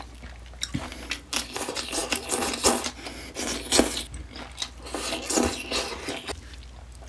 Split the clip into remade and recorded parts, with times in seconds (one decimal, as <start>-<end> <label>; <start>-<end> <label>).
0.0-7.1 recorded

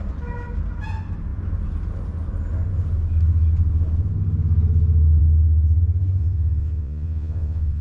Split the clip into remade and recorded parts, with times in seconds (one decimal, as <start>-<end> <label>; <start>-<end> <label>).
0.0-6.2 recorded; 6.2-7.8 remade